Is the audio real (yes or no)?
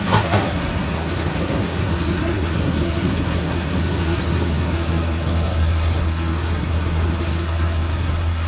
no